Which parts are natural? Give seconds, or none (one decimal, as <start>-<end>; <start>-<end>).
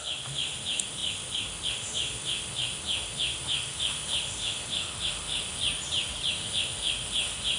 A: 5.6-6.3